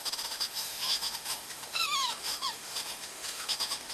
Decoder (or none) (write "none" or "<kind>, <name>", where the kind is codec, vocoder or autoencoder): autoencoder, DAC-VAE